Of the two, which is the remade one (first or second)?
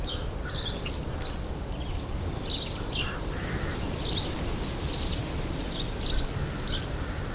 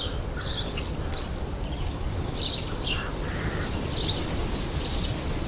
second